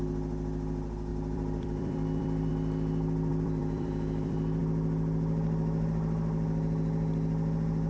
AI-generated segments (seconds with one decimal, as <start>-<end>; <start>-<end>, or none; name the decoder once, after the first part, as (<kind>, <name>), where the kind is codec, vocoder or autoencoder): 1.1-2.5 (vocoder, BigVGAN v2); 3.3-4.6